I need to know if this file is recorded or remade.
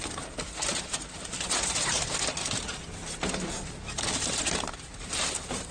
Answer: recorded